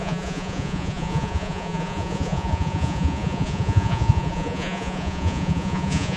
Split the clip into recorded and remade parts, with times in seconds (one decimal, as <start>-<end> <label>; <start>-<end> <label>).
0.0-6.2 remade